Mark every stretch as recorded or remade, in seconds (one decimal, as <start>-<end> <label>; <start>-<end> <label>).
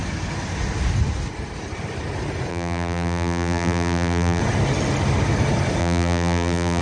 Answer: 0.0-2.5 recorded; 2.5-4.4 remade; 4.4-5.8 recorded; 5.8-6.8 remade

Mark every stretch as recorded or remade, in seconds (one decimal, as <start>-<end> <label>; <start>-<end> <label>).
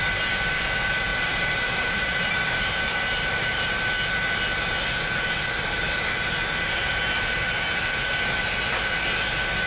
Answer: 0.0-1.1 recorded; 1.1-3.9 remade; 3.9-9.7 recorded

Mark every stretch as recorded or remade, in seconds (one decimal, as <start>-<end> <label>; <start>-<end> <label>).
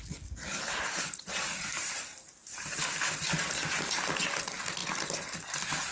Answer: 0.0-0.5 recorded; 0.5-2.0 remade; 2.0-2.4 recorded; 2.4-3.4 remade; 3.4-5.9 recorded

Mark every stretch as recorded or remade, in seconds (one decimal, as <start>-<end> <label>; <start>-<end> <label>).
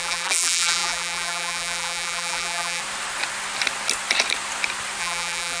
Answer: 0.0-2.8 remade; 2.8-5.0 recorded; 5.0-5.6 remade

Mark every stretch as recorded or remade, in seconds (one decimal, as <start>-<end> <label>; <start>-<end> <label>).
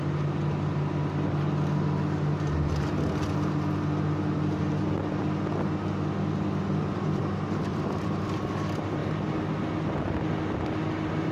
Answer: 0.0-7.7 recorded; 7.7-8.2 remade; 8.2-11.3 recorded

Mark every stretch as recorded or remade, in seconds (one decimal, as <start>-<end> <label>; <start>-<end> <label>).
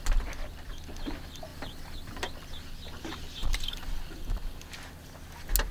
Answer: 0.0-1.5 recorded; 1.5-2.2 remade; 2.2-3.4 recorded; 3.4-3.9 remade; 3.9-5.7 recorded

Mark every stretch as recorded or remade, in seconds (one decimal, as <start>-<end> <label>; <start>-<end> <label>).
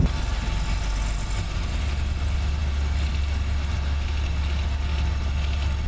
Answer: 0.0-5.9 recorded